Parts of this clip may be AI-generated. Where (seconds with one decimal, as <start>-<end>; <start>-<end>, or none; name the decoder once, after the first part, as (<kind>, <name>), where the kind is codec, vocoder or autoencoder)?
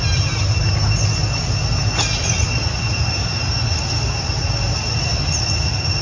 none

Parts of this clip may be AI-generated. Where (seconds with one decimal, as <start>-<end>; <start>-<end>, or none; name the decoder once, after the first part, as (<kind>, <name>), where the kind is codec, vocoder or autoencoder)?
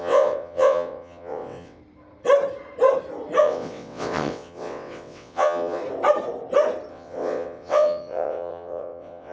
0.0-1.8 (vocoder, WaveNeXt); 3.4-5.8; 6.9-9.3